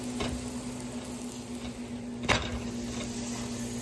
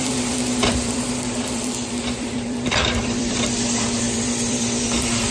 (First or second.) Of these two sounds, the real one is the first